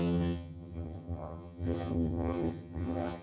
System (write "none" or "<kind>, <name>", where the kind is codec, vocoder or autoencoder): vocoder, HiFi-GAN